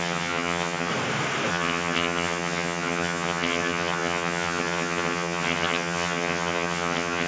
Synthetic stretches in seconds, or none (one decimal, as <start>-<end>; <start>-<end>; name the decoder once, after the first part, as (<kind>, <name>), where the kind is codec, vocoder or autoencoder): 0.0-0.9 (vocoder, HiFi-GAN); 1.5-7.3